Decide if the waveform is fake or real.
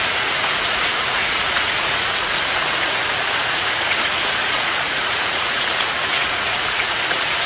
fake